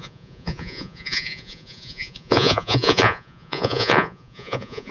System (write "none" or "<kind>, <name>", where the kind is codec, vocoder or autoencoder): vocoder, Vocos